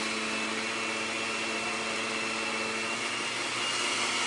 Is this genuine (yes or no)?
yes